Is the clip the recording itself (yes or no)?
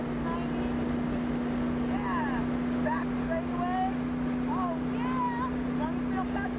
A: yes